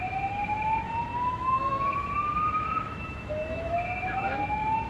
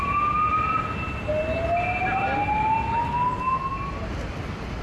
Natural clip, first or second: second